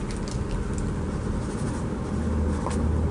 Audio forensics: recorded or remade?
recorded